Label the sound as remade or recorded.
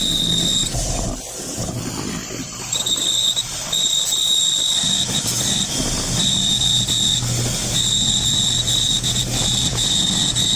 recorded